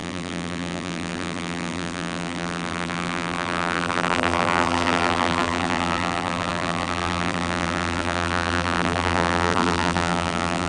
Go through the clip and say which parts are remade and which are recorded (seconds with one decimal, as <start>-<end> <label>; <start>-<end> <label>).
0.0-10.7 remade